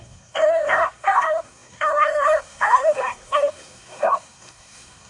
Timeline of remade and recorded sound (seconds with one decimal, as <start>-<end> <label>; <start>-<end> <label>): 0.0-5.1 remade

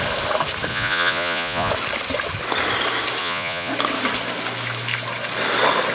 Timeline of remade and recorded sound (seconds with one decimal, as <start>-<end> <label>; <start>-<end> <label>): 0.0-0.7 recorded; 0.7-1.7 remade; 1.7-3.2 recorded; 3.2-3.7 remade; 3.7-5.9 recorded

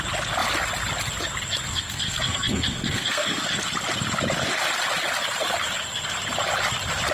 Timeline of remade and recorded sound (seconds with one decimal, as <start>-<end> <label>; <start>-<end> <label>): 0.0-1.7 recorded; 1.7-3.6 remade; 3.6-7.1 recorded

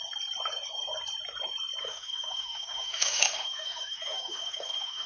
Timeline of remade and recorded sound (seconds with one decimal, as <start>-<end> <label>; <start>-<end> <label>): 0.0-1.8 recorded; 1.8-5.1 remade

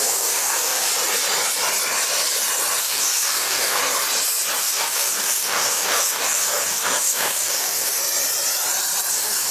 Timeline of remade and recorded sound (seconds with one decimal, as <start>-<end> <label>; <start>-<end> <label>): 0.0-0.9 remade; 0.9-2.8 recorded; 2.8-3.8 remade; 3.8-4.6 recorded; 4.6-8.0 remade; 8.0-9.1 recorded; 9.1-9.5 remade